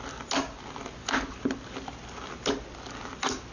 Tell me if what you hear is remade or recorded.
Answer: recorded